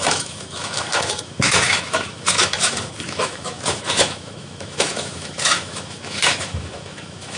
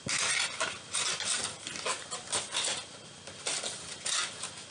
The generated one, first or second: first